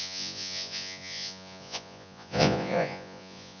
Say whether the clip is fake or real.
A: fake